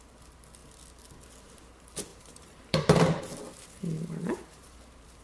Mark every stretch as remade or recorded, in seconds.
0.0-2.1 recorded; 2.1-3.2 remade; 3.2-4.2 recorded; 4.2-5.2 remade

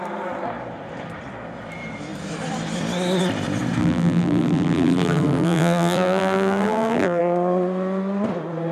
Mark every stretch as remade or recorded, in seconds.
0.0-3.8 recorded; 3.8-7.2 remade; 7.2-8.7 recorded

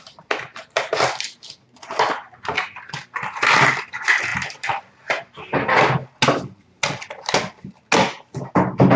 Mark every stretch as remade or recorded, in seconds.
0.0-0.5 recorded; 0.5-1.4 remade; 1.4-9.0 recorded

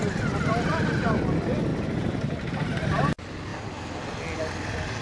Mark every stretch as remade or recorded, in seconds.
0.0-1.7 recorded; 1.7-2.8 remade; 2.8-5.0 recorded

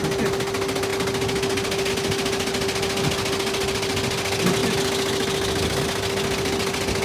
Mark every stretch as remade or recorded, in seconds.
0.0-7.0 recorded

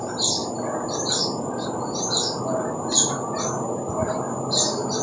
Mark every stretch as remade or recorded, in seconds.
0.0-5.0 recorded

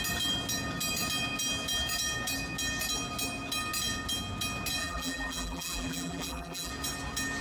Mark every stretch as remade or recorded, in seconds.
0.0-4.8 recorded; 4.8-6.7 remade; 6.7-7.4 recorded